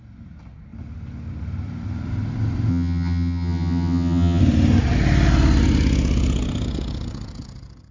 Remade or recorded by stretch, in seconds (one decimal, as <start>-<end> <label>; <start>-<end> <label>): 0.0-2.7 recorded; 2.7-4.4 remade; 4.4-7.9 recorded